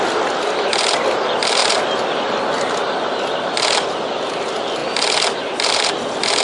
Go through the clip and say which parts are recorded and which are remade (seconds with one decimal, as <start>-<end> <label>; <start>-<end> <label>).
0.0-6.4 recorded